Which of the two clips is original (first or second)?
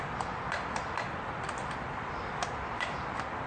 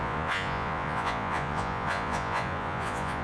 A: first